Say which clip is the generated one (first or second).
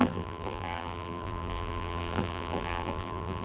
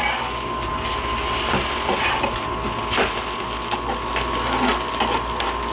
first